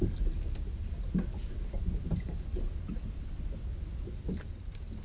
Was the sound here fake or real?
real